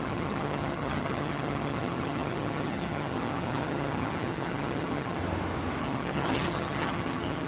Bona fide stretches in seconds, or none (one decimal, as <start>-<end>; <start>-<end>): 5.2-5.8